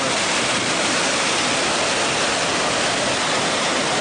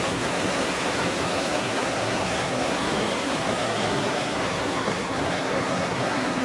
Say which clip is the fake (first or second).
second